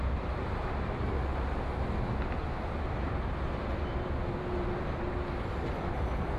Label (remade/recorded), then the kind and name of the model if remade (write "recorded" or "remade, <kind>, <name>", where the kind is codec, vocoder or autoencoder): recorded